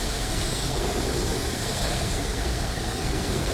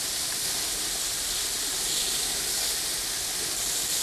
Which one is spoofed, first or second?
first